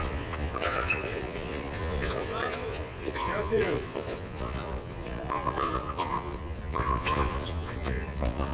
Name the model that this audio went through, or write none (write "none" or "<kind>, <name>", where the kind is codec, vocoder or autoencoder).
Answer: vocoder, Vocos